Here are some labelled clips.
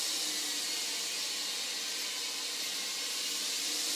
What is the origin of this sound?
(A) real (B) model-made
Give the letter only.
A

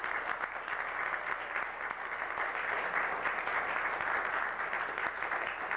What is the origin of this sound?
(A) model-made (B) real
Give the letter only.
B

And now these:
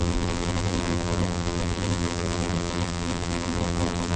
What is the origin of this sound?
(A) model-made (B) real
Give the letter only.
A